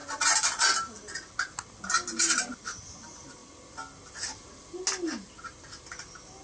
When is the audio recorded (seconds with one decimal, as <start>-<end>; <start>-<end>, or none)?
0.0-6.4